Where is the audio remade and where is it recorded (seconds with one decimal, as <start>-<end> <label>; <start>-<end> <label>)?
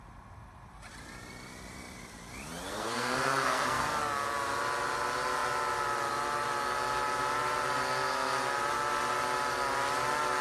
0.0-2.7 recorded; 2.7-4.0 remade; 4.0-10.4 recorded